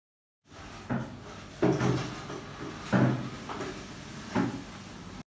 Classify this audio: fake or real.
real